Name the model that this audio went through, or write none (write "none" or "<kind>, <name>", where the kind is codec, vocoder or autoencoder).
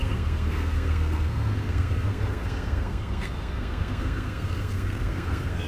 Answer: codec, SNAC